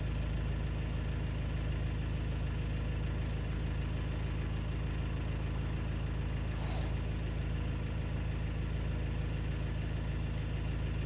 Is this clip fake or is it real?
real